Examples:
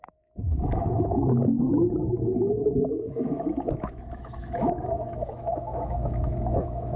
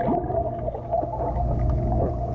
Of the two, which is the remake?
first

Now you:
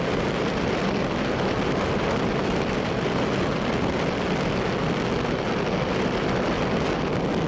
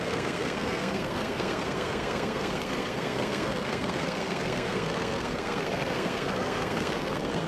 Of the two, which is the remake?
second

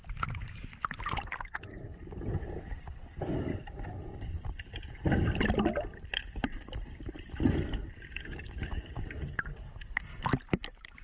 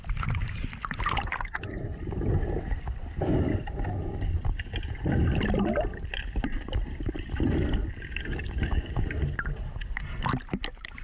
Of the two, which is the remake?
first